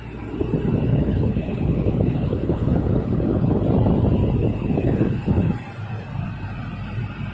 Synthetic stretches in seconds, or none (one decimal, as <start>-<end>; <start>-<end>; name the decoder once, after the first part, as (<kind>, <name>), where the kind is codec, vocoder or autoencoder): 0.9-3.6 (codec, HILCodec); 4.5-5.5